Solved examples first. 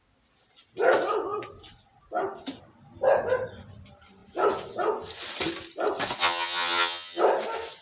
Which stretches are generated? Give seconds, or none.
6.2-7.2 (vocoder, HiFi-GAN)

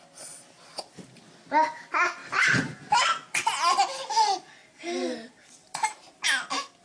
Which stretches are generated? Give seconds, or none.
4.6-6.2 (vocoder, BigVGAN v2)